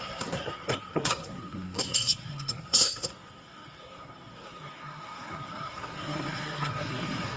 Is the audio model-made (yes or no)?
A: yes